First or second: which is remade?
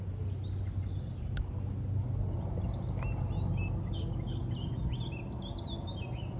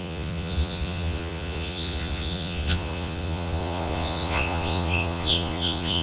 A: second